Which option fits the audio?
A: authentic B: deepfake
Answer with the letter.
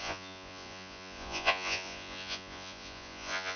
B